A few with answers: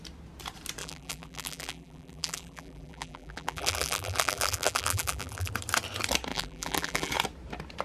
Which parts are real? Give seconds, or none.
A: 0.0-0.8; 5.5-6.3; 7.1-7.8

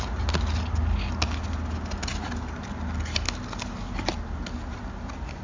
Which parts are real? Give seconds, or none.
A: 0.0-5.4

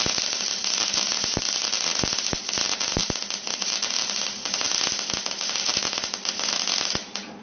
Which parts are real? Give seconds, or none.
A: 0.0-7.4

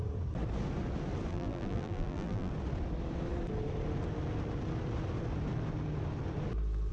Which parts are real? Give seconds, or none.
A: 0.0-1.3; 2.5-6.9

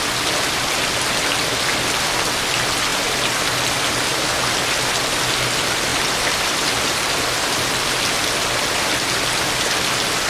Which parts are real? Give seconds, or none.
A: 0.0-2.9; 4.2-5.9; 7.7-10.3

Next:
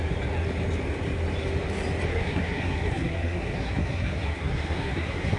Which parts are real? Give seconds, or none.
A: 0.0-2.1